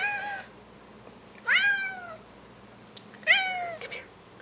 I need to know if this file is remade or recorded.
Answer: recorded